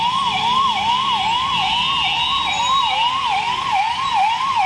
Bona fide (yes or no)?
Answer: yes